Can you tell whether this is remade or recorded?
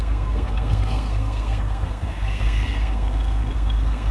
remade